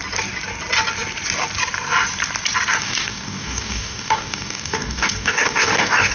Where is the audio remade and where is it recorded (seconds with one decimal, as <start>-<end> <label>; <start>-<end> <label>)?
0.0-2.8 recorded; 2.8-6.1 remade